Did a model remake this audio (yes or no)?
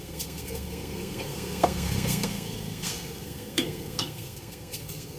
yes